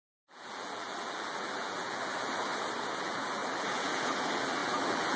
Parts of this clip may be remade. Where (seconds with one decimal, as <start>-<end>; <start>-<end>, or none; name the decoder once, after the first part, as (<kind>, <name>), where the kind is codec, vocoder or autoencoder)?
0.0-2.5 (vocoder, BigVGAN v2); 3.0-5.2